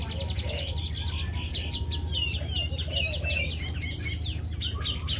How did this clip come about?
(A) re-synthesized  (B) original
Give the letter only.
B